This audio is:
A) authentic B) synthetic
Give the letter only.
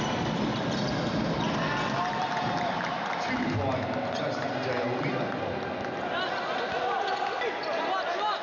A